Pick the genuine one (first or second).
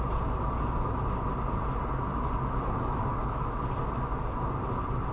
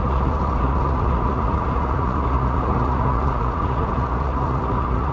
first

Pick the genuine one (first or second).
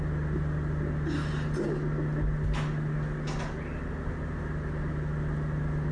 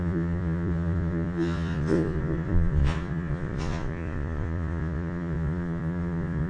first